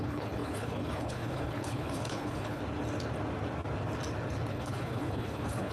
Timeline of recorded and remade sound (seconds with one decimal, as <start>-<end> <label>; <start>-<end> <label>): 0.0-2.6 remade; 2.6-4.5 recorded; 4.5-5.7 remade